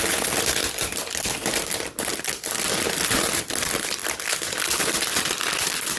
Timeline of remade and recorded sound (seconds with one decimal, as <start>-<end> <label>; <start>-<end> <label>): 0.0-4.0 recorded; 4.0-6.0 remade

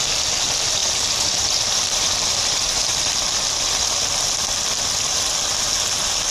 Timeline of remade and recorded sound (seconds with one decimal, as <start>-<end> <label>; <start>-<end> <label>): 0.0-0.8 recorded; 0.8-4.1 remade; 4.1-6.3 recorded

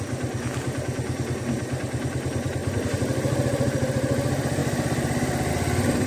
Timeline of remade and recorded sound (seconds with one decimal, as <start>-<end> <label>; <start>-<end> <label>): 0.0-2.6 recorded; 2.6-3.9 remade; 3.9-6.1 recorded